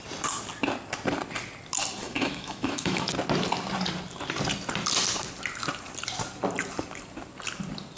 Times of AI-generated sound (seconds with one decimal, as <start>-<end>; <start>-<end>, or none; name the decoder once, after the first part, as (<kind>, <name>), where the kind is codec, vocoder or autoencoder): 2.0-3.1 (autoencoder, DAC-VAE)